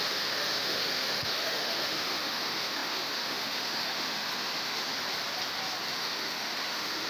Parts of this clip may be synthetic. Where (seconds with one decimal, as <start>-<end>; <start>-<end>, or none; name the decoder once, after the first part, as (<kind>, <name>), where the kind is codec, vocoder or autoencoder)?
0.0-4.9 (autoencoder, DAC-VAE); 5.9-7.1